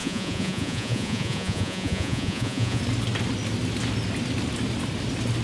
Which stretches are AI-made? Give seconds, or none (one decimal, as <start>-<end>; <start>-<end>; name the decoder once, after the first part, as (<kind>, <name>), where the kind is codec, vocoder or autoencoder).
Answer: 0.0-2.8 (vocoder, Vocos)